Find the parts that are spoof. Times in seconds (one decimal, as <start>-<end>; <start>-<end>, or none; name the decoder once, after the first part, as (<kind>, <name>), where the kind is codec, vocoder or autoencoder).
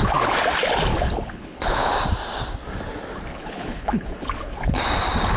0.9-1.9 (codec, HILCodec); 3.3-4.8